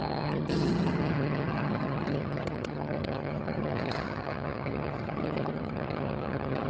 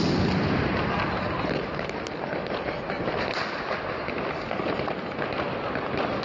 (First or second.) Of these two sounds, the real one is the second